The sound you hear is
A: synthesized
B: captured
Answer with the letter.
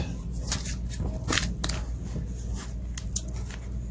B